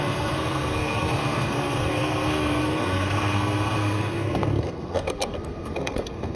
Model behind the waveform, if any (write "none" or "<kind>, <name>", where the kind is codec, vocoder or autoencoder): codec, SNAC